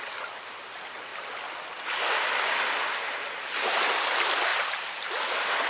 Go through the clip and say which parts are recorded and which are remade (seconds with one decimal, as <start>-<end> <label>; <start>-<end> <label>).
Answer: 0.0-5.7 recorded